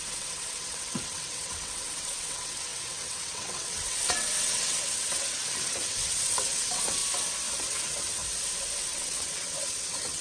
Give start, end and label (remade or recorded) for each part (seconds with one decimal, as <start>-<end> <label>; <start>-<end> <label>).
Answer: 0.0-7.0 remade; 7.0-7.6 recorded; 7.6-8.2 remade; 8.2-8.8 recorded; 8.8-10.2 remade